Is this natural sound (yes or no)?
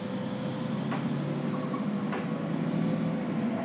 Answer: yes